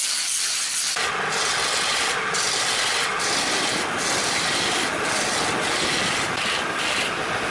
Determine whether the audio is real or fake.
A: real